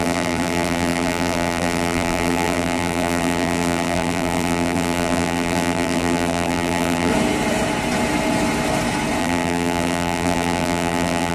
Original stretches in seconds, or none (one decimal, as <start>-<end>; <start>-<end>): 7.1-9.2